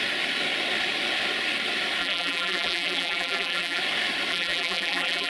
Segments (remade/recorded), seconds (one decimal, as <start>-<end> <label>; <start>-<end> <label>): 0.0-2.0 recorded; 2.0-3.8 remade; 3.8-4.3 recorded; 4.3-5.3 remade